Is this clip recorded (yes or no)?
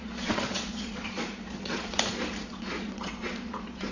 no